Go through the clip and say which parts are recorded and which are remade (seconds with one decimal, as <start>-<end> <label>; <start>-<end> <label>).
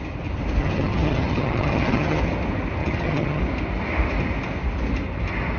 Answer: 0.0-0.6 recorded; 0.6-2.2 remade; 2.2-2.8 recorded; 2.8-3.4 remade; 3.4-5.6 recorded